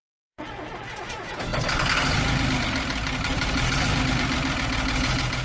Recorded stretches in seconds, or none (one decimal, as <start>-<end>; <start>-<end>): 1.5-4.6